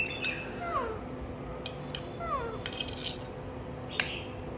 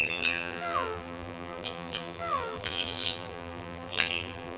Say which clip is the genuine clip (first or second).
first